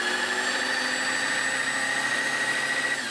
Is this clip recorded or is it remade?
recorded